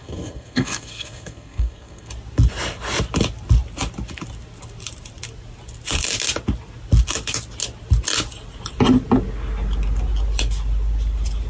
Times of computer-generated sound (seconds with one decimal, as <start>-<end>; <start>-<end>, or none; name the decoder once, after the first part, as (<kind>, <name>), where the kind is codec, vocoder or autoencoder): 0.0-2.1 (codec, SNAC)